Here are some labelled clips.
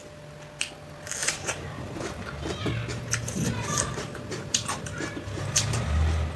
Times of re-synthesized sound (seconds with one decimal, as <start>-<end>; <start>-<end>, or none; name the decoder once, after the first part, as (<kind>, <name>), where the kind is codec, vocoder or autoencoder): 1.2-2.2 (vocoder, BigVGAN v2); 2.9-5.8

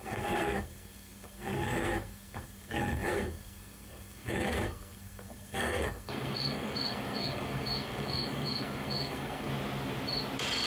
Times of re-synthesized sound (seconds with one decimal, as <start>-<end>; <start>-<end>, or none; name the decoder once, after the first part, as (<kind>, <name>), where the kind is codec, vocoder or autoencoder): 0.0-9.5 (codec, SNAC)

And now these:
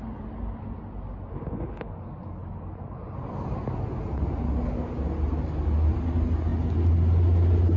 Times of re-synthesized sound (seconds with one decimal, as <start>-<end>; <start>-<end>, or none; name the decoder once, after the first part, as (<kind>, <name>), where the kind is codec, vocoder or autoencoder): 1.3-1.9 (autoencoder, DAC-VAE)